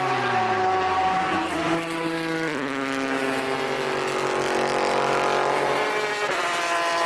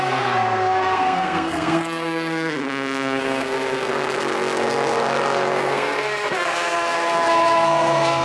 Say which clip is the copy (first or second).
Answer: second